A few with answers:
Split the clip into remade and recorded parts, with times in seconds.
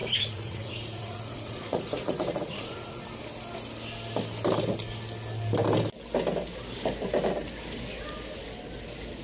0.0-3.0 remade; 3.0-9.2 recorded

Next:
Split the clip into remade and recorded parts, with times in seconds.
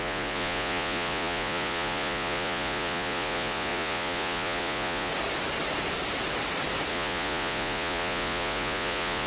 0.0-5.1 remade; 5.1-6.9 recorded; 6.9-9.3 remade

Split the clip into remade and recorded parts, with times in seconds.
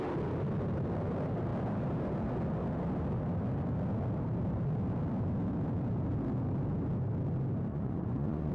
0.0-7.7 recorded; 7.7-8.5 remade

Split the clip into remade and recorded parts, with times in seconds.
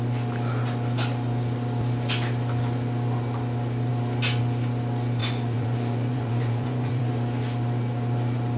0.0-5.2 recorded; 5.2-7.1 remade; 7.1-8.6 recorded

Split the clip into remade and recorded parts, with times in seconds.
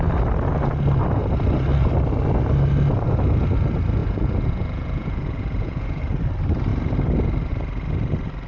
0.0-4.0 recorded; 4.0-6.0 remade; 6.0-8.5 recorded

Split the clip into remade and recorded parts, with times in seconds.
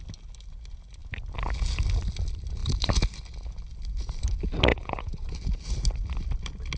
0.0-4.7 recorded; 4.7-5.3 remade; 5.3-6.8 recorded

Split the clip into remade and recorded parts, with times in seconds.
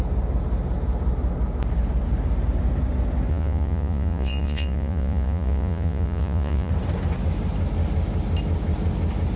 0.0-3.3 recorded; 3.3-6.7 remade; 6.7-9.4 recorded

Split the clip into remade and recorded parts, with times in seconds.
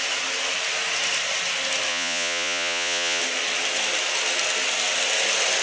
0.0-1.9 recorded; 1.9-3.2 remade; 3.2-5.6 recorded